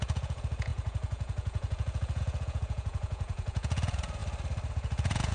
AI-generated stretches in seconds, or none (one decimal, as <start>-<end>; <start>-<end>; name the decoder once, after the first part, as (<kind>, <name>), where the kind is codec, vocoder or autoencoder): 0.0-4.2 (vocoder, Vocos); 4.7-5.3